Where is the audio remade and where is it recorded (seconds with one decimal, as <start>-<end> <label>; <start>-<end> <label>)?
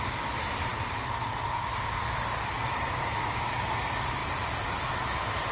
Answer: 0.0-5.5 recorded